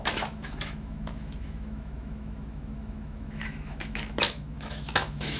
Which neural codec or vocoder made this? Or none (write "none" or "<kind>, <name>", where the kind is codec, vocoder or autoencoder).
autoencoder, DAC-VAE